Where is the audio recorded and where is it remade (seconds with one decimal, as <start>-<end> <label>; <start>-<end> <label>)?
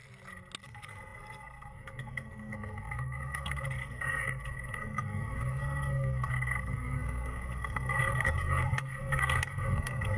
0.0-0.6 recorded; 0.6-10.2 remade